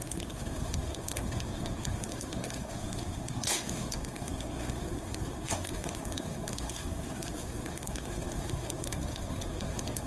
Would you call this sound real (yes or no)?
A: no